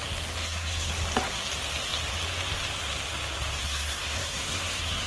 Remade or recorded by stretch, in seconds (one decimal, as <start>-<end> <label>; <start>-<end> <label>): 0.0-0.4 recorded; 0.4-0.9 remade; 0.9-3.6 recorded; 3.6-5.1 remade